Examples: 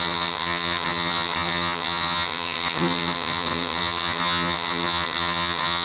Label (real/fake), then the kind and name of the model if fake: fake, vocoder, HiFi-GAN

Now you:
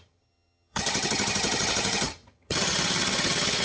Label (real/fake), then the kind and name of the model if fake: fake, vocoder, HiFi-GAN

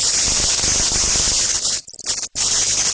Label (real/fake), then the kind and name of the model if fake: real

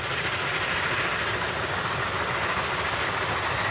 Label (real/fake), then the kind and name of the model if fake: real